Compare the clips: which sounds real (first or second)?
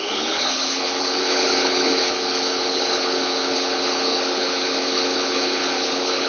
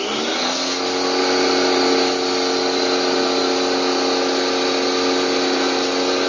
second